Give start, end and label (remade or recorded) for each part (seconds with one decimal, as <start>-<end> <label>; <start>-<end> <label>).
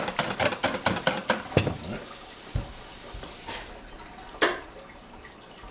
0.0-5.7 recorded